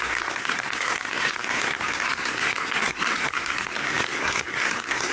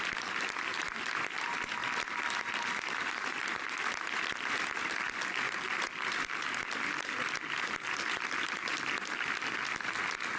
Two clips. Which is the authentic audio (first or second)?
second